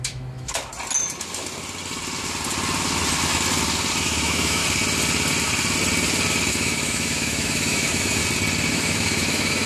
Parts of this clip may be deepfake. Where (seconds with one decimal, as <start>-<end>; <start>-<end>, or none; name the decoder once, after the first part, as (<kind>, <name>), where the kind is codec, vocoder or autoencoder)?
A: 0.0-0.7 (autoencoder, DAC-VAE); 4.0-4.6; 6.5-8.2; 8.7-9.7